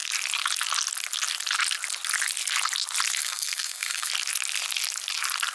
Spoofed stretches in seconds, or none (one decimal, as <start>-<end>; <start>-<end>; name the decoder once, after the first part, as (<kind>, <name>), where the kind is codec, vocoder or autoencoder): 3.2-4.1 (codec, SNAC)